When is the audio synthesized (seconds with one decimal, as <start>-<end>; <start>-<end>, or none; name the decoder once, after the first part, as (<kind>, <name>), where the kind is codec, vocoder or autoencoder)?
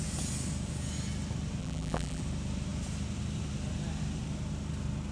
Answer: 1.6-2.2 (vocoder, BigVGAN v2)